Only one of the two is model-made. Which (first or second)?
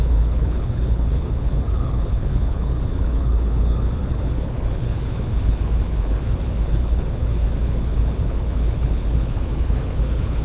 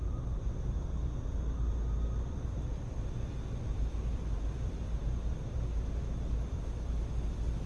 first